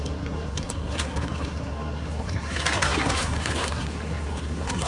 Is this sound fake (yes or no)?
yes